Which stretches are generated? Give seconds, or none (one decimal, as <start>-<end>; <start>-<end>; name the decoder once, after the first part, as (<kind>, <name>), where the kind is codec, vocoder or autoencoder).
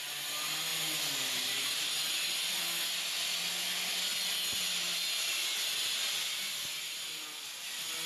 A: none